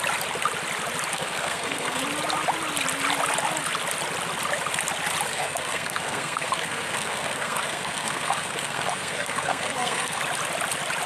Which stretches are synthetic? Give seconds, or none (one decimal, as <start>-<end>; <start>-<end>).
1.1-2.0; 5.3-10.2